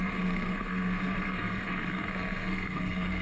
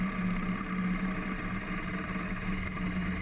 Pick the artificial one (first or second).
first